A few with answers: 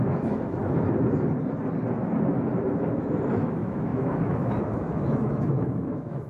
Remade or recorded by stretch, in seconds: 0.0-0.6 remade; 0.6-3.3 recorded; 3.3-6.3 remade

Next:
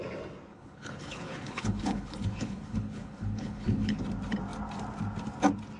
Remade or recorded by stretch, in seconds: 0.0-0.5 recorded; 0.5-4.0 remade; 4.0-5.8 recorded

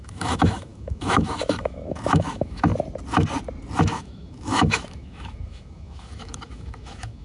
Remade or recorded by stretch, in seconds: 0.0-2.7 remade; 2.7-3.8 recorded; 3.8-7.2 remade